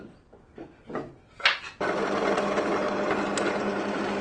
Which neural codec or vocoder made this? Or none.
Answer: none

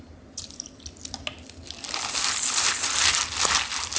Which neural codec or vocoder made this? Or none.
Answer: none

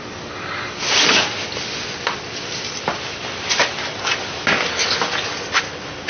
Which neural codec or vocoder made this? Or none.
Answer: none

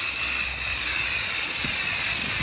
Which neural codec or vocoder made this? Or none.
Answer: none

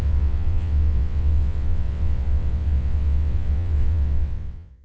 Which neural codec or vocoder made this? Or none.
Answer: vocoder, WaveNeXt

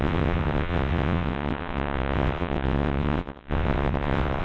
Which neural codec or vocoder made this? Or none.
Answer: vocoder, WaveNeXt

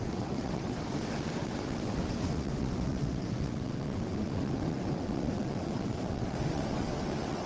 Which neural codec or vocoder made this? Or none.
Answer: vocoder, WaveNeXt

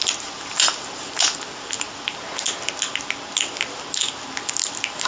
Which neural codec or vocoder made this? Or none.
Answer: none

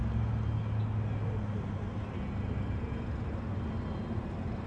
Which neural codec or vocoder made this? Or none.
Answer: none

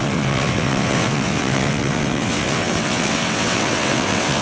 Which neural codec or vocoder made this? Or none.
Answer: vocoder, WaveNeXt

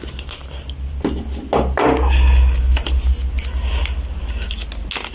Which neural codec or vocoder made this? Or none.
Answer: none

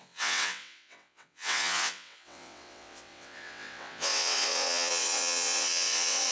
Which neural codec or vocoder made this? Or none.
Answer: vocoder, WaveNeXt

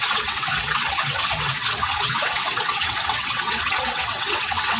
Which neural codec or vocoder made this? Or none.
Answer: vocoder, WaveNeXt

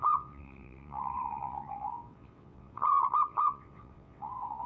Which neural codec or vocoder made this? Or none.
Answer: vocoder, WaveNeXt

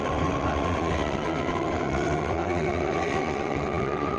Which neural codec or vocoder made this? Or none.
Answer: vocoder, WaveNeXt